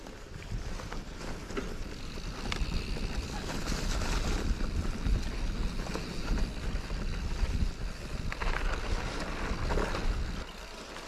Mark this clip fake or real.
real